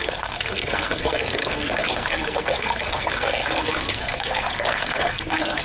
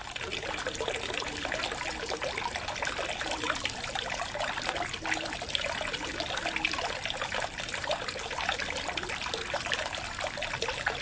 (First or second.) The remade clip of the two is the first